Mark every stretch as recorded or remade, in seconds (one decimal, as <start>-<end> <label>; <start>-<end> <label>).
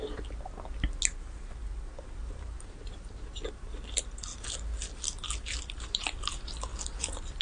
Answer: 0.0-1.6 recorded; 1.6-2.8 remade; 2.8-6.7 recorded; 6.7-7.4 remade